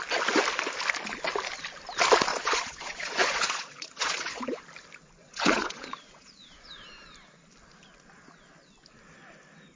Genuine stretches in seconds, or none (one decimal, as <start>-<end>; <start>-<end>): 0.0-2.3; 4.6-5.2; 6.7-9.8